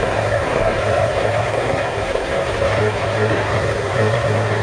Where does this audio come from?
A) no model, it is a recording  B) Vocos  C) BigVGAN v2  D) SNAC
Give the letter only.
D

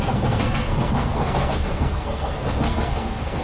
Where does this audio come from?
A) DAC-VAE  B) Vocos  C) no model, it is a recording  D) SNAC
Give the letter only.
D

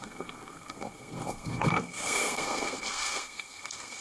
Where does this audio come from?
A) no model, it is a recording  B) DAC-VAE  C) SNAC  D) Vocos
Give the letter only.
C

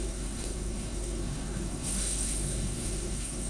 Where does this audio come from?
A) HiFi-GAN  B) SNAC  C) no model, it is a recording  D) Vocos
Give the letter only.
B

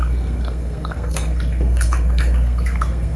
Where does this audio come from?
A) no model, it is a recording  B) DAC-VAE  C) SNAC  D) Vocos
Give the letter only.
C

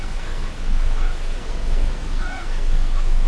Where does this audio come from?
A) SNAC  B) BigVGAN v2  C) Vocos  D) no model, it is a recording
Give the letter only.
A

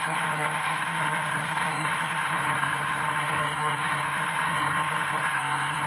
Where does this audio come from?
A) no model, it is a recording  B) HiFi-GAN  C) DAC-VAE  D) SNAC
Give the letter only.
D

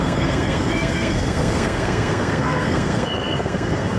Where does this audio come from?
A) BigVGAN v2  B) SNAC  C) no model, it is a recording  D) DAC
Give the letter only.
B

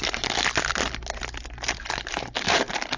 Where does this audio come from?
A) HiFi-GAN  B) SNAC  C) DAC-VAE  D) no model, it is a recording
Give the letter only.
D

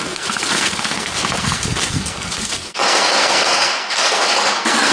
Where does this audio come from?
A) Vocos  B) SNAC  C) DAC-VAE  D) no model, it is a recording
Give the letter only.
B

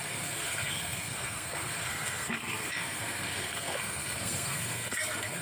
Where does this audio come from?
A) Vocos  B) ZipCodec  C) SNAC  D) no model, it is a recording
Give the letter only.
C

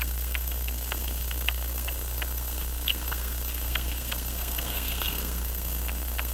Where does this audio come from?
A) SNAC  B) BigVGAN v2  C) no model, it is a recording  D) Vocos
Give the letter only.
A